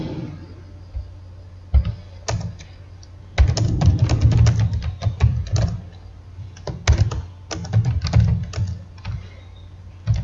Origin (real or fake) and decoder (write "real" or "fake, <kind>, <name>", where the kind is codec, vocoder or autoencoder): real